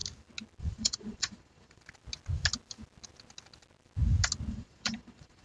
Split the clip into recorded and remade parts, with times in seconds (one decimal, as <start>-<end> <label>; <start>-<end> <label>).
0.0-0.6 recorded; 0.6-1.8 remade; 1.8-4.5 recorded; 4.5-5.4 remade